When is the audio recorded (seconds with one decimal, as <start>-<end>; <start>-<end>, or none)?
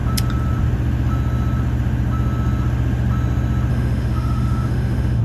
0.0-3.7